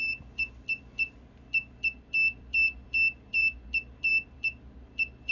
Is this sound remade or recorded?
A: remade